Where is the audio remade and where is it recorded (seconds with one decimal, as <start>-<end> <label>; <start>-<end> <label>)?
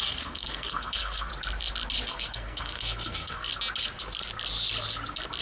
0.0-1.3 remade; 1.3-2.1 recorded; 2.1-3.5 remade; 3.5-5.4 recorded